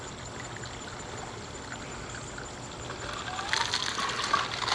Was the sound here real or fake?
real